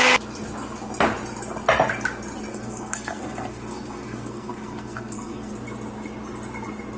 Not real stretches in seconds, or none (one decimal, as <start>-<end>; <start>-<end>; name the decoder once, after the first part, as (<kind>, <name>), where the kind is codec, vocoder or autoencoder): 2.5-5.5 (codec, SNAC)